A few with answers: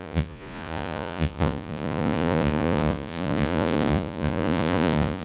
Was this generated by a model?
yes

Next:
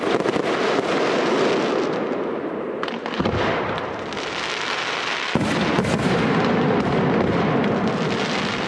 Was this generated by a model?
no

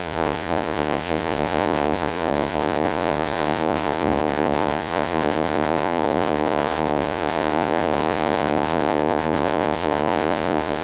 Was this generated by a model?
yes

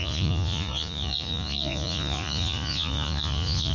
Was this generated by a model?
yes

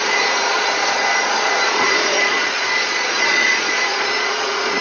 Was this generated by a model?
yes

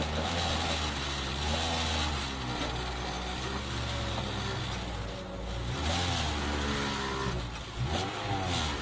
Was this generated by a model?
no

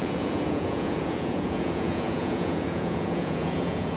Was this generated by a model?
yes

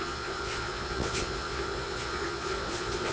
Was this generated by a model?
yes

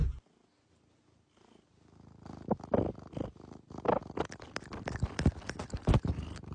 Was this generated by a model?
no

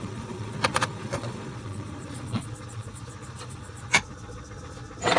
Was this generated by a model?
yes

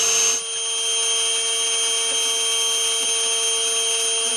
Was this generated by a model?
no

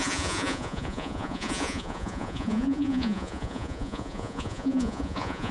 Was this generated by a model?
yes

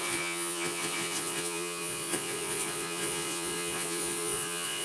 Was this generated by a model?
yes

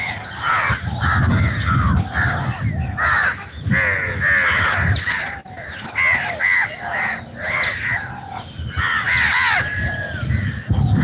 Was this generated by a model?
no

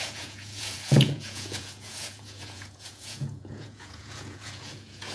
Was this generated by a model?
yes